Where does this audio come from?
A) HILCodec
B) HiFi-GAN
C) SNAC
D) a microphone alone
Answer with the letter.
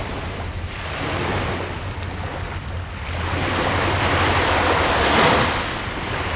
D